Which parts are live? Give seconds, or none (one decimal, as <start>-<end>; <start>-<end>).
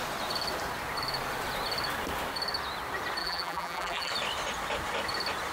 0.0-3.2; 4.1-5.5